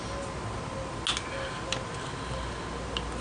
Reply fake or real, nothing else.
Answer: real